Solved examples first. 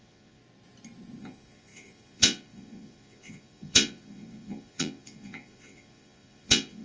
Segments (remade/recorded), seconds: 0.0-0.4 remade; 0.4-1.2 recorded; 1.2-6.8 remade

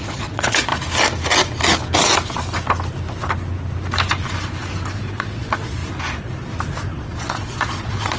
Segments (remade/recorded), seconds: 0.0-0.7 remade; 0.7-4.9 recorded; 4.9-5.8 remade; 5.8-6.8 recorded; 6.8-8.2 remade

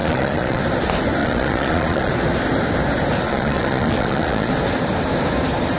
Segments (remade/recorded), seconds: 0.0-0.6 remade; 0.6-1.2 recorded; 1.2-2.1 remade; 2.1-3.3 recorded; 3.3-4.5 remade; 4.5-5.8 recorded

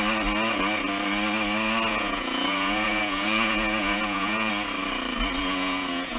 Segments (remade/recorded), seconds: 0.0-1.9 recorded; 1.9-4.5 remade; 4.5-5.4 recorded; 5.4-6.2 remade